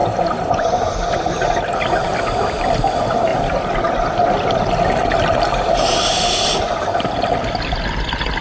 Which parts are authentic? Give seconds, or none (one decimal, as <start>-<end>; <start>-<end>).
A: 0.0-3.3; 7.3-8.4